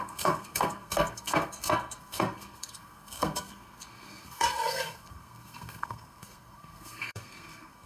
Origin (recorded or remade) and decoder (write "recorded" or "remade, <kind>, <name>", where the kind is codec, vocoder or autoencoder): remade, codec, SNAC